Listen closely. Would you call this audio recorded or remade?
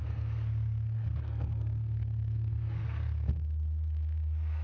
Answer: remade